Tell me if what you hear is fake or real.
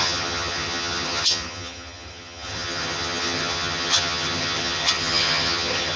fake